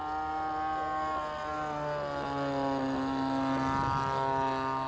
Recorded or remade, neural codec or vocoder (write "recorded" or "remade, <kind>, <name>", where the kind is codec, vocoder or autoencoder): recorded